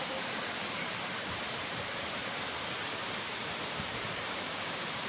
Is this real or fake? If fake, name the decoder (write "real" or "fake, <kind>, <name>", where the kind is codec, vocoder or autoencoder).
fake, vocoder, BigVGAN v2